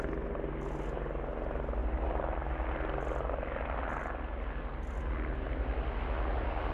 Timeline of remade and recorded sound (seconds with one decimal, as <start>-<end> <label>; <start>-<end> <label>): 0.0-6.7 recorded